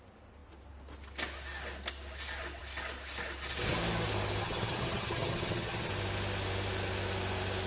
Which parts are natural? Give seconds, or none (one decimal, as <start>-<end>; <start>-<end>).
0.0-4.4; 5.9-7.7